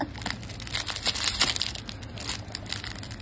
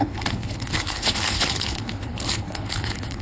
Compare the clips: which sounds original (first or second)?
first